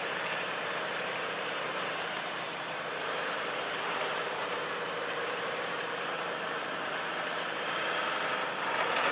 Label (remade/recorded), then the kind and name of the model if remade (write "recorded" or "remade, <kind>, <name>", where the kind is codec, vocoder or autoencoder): remade, vocoder, BigVGAN v2